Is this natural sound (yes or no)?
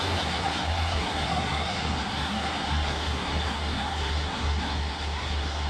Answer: no